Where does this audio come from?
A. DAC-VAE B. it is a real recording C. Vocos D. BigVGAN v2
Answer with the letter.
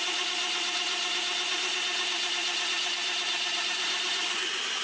D